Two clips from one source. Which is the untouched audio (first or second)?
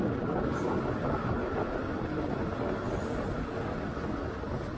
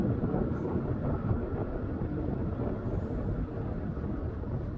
first